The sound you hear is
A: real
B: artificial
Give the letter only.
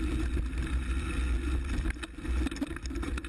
A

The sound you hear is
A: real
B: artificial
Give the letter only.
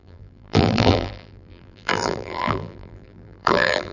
B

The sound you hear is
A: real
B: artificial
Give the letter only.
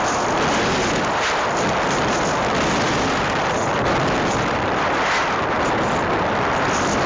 B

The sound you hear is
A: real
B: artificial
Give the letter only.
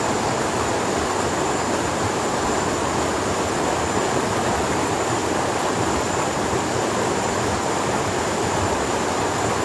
B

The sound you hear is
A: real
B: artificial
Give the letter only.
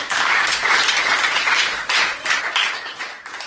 B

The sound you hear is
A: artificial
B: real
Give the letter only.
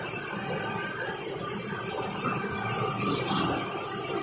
B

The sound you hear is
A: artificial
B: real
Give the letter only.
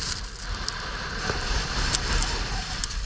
B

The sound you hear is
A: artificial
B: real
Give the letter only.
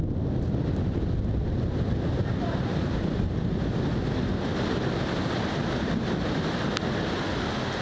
B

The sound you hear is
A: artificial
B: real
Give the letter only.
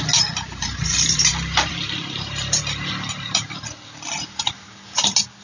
A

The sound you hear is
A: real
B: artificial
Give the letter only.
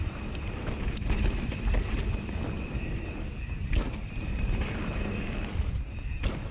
A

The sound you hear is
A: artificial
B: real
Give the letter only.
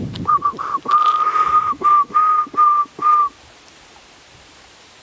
B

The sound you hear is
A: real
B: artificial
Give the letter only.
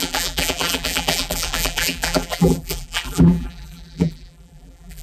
B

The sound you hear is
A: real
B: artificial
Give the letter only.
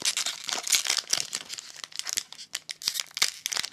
A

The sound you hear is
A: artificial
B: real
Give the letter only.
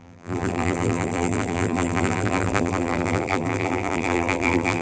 A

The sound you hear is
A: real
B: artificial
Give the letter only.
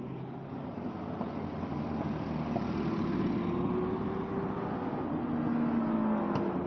A